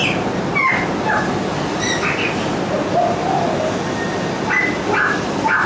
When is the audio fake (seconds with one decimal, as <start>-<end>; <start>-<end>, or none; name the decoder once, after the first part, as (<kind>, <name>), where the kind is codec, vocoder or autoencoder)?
none